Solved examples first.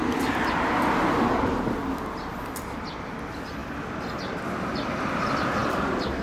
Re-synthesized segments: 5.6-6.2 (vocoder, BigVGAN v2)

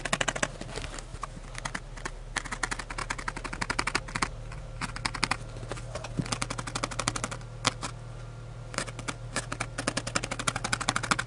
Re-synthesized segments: none

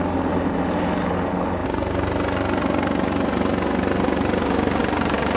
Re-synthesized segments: none

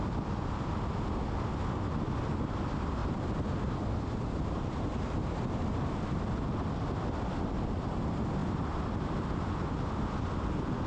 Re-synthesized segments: 3.0-6.2 (vocoder, BigVGAN v2); 8.4-9.7